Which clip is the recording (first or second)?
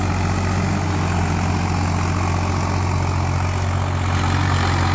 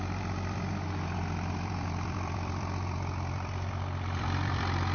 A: first